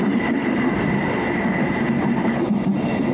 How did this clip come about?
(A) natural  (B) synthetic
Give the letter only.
A